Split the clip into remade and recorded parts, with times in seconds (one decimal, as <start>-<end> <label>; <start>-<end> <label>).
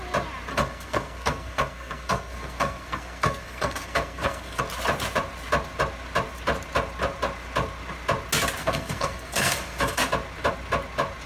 0.0-0.5 recorded; 0.5-4.6 remade; 4.6-8.6 recorded; 8.6-10.0 remade; 10.0-11.3 recorded